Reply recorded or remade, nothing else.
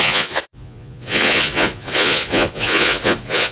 remade